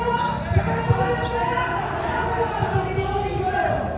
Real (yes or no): yes